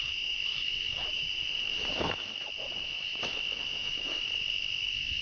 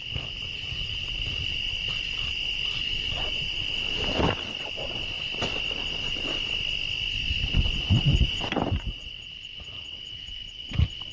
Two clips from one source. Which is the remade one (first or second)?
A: first